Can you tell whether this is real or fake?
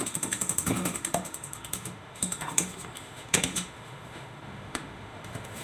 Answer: fake